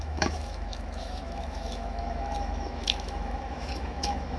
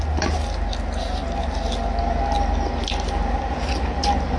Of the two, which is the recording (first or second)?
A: second